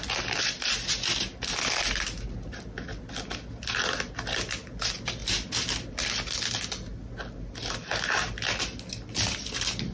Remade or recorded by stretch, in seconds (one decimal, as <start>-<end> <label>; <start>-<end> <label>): 0.0-9.9 recorded